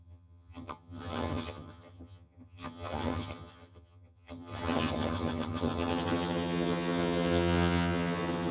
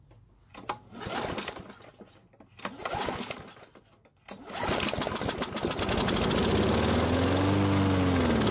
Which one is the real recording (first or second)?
second